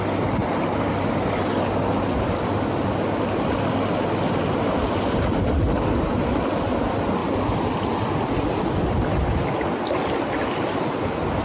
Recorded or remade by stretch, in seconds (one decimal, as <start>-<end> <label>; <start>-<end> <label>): 0.0-11.4 recorded